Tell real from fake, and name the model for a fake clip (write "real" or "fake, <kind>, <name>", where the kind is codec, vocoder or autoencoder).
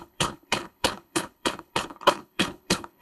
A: fake, codec, HILCodec